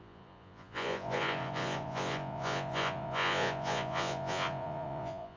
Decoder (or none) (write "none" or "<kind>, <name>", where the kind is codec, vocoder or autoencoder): vocoder, Vocos